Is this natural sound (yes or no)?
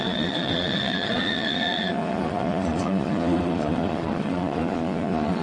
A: no